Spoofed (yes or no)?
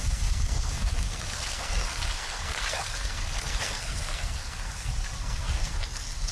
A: yes